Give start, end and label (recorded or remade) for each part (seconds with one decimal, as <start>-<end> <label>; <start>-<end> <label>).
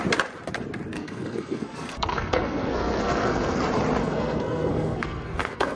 0.0-0.9 recorded; 0.9-3.6 remade; 3.6-4.0 recorded; 4.0-5.8 remade